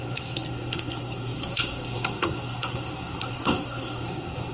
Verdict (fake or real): fake